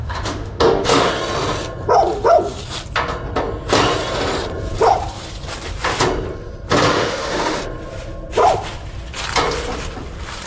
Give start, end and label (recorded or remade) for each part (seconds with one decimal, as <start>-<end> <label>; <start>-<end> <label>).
0.0-1.1 remade; 1.1-6.9 recorded; 6.9-7.6 remade; 7.6-10.5 recorded